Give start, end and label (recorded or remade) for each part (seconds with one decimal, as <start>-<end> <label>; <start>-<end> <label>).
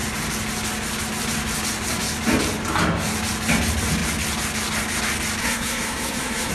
0.0-5.4 recorded; 5.4-6.5 remade